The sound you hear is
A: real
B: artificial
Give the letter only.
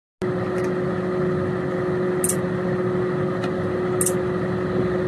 A